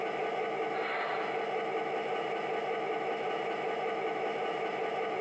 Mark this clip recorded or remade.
remade